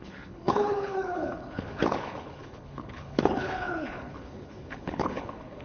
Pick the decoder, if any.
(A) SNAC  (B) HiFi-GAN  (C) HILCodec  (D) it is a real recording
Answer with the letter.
C